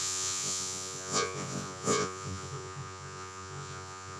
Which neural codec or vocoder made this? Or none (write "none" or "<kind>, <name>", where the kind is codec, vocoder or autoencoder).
vocoder, Vocos